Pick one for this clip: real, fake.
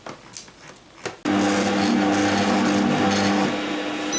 real